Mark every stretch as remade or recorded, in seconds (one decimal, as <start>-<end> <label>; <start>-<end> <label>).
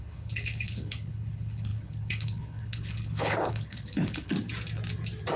0.0-4.3 remade; 4.3-5.4 recorded